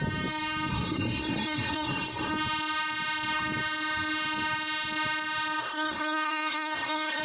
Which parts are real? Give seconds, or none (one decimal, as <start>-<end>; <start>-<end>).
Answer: 0.0-0.7; 2.3-5.6